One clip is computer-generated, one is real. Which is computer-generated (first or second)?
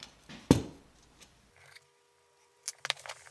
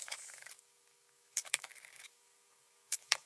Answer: second